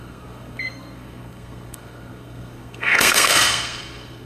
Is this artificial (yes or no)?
yes